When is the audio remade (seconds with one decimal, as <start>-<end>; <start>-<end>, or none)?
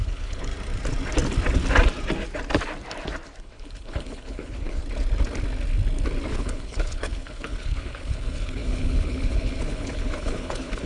0.0-0.5; 3.4-4.8; 6.3-10.9